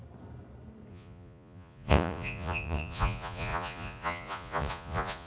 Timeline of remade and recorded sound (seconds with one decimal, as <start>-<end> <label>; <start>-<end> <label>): 0.0-0.9 recorded; 0.9-5.3 remade